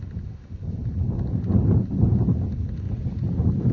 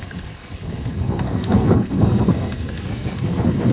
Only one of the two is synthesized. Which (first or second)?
second